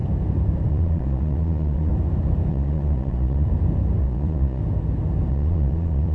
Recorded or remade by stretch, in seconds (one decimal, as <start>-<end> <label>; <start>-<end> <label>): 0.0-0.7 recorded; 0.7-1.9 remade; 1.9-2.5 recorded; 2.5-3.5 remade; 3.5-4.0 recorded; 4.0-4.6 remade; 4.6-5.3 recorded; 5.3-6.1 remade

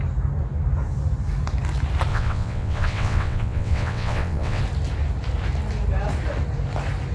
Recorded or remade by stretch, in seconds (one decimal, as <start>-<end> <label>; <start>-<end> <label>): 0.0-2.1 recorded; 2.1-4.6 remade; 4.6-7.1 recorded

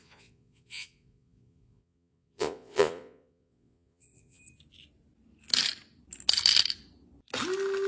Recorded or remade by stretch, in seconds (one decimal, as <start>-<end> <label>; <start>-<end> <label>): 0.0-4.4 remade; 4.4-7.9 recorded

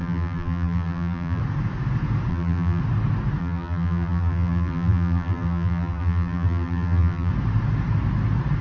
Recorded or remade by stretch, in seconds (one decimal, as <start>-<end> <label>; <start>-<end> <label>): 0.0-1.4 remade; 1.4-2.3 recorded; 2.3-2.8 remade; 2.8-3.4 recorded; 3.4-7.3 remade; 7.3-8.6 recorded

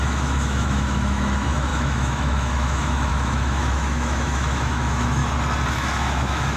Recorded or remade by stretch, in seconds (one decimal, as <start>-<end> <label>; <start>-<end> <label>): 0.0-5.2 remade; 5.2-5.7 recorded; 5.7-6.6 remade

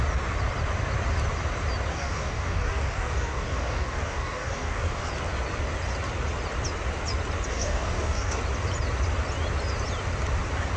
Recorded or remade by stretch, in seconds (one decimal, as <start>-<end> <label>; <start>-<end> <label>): 0.0-1.9 recorded; 1.9-5.1 remade; 5.1-7.5 recorded; 7.5-8.4 remade; 8.4-10.8 recorded